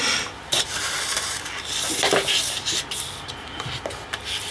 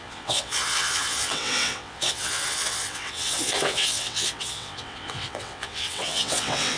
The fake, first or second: second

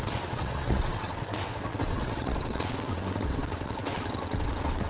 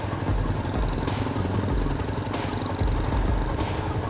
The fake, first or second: first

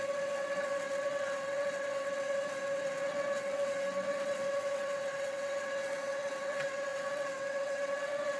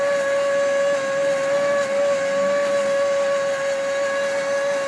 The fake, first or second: first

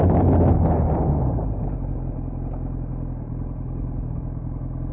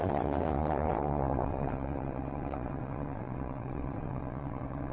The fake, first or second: second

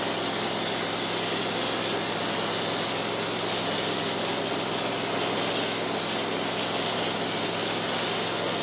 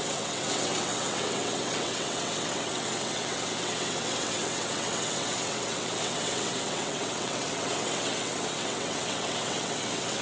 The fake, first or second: second